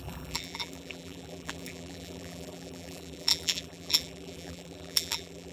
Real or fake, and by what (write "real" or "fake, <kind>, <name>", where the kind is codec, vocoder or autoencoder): fake, vocoder, BigVGAN v2